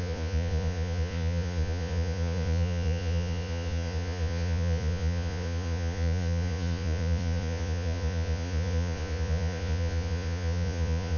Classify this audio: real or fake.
fake